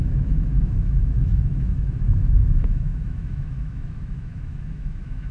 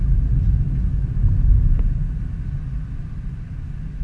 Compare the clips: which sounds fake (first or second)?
first